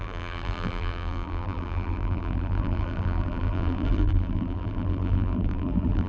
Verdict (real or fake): fake